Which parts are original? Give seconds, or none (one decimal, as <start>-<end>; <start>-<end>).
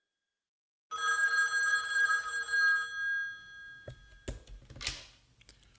0.0-1.7; 2.3-5.8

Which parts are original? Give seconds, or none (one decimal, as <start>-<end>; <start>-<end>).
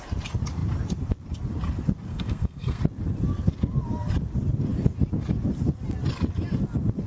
0.0-2.1; 2.8-7.1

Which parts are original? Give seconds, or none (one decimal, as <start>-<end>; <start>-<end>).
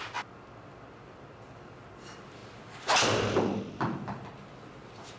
0.0-5.2